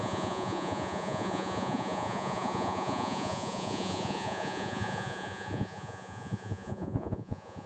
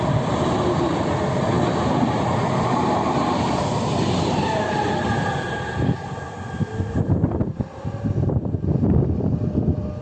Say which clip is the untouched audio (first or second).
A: second